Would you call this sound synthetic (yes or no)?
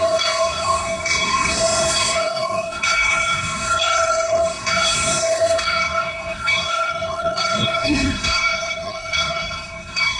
yes